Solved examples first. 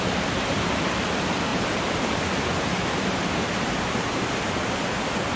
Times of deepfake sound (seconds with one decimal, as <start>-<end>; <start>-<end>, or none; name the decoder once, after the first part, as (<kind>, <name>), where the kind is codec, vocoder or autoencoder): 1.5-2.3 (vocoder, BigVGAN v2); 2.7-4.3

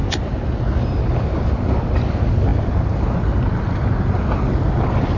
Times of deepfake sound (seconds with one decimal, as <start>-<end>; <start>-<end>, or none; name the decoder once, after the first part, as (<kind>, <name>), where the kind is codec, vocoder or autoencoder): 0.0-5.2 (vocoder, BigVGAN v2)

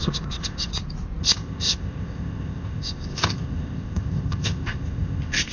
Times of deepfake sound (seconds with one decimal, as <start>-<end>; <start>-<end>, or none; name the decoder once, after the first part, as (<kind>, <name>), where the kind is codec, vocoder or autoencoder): 0.0-0.7 (codec, ZipCodec); 1.2-5.5